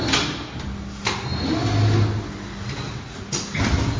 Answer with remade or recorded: recorded